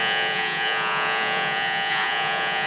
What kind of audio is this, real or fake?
fake